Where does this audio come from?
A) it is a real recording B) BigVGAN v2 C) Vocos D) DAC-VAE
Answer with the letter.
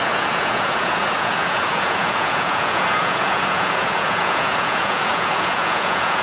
C